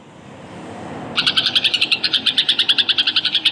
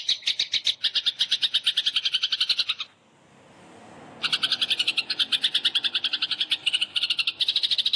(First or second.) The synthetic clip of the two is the first